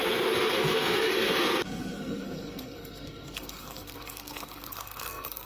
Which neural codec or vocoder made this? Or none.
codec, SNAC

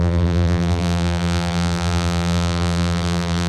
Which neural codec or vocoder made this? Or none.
vocoder, BigVGAN v2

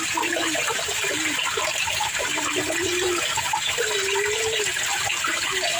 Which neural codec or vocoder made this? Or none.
vocoder, BigVGAN v2